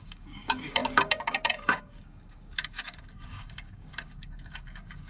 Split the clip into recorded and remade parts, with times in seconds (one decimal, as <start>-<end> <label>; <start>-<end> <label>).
0.0-5.1 remade